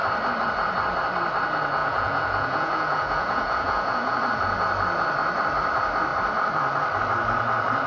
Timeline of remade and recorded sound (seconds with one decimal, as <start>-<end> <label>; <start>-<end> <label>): 0.0-1.8 recorded; 1.8-4.2 remade; 4.2-7.9 recorded